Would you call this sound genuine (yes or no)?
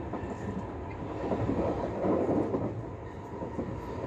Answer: yes